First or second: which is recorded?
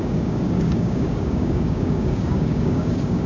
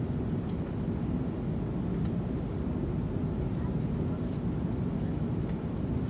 second